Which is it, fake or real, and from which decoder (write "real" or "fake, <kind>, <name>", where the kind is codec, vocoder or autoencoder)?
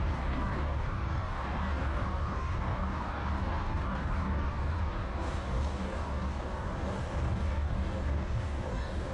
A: fake, codec, DAC